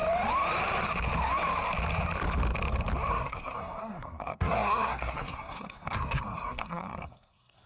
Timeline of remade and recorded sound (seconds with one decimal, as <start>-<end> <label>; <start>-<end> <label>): 0.0-3.1 recorded; 3.1-7.7 remade